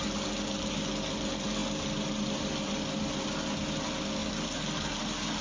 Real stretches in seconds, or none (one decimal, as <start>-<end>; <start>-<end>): 0.0-5.4